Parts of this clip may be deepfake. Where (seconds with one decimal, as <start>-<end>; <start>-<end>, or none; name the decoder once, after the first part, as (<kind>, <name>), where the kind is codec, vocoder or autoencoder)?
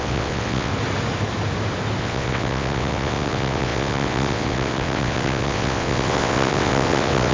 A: 0.0-0.7 (vocoder, WaveNeXt); 2.0-7.3